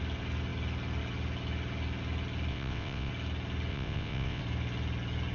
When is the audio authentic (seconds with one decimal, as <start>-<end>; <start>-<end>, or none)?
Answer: 0.0-2.5; 3.1-3.7; 4.4-5.3